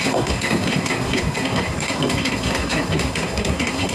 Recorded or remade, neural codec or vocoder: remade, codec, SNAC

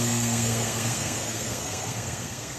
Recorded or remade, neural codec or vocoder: remade, codec, SNAC